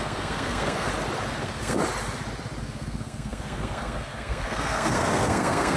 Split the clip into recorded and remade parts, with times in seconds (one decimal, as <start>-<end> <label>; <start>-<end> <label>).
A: 0.0-0.9 remade; 0.9-1.4 recorded; 1.4-1.8 remade; 1.8-2.6 recorded; 2.6-5.8 remade